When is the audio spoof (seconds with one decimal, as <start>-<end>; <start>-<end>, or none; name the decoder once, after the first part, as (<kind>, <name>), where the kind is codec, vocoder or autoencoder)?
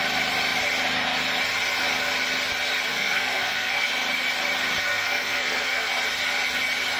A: 2.9-3.9 (codec, SNAC); 4.9-5.9